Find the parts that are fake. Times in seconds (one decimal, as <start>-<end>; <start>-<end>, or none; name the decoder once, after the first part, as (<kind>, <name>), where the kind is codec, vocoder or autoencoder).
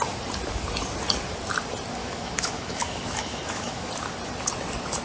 2.0-3.9 (autoencoder, DAC-VAE)